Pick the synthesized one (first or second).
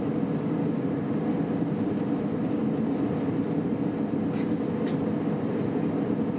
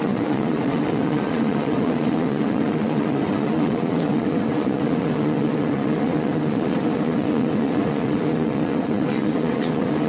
second